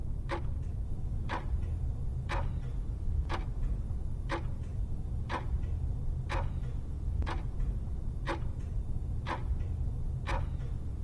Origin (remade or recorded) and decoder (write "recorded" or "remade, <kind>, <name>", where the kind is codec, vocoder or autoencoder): remade, vocoder, BigVGAN v2